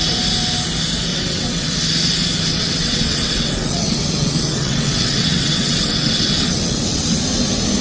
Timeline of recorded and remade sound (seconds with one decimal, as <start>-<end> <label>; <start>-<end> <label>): 0.0-1.1 recorded; 1.1-1.8 remade; 1.8-2.5 recorded; 2.5-7.2 remade; 7.2-7.8 recorded